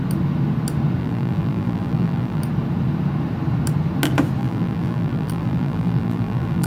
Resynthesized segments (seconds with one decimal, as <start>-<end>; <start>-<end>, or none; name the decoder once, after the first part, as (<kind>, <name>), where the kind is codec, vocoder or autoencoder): 1.0-2.4 (vocoder, BigVGAN v2); 4.4-6.7